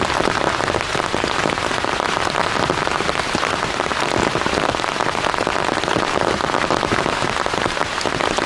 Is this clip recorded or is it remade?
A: recorded